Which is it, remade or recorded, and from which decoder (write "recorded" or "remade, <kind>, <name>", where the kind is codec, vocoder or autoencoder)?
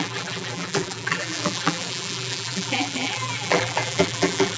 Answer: remade, vocoder, BigVGAN v2